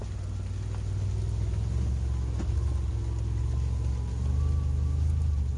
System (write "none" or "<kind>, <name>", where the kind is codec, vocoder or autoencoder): none